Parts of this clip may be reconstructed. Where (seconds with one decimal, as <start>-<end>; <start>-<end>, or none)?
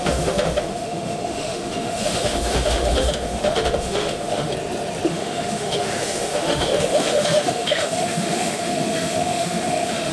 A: 0.0-4.5; 5.1-10.1